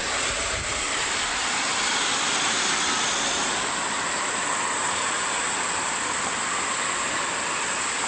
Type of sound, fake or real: fake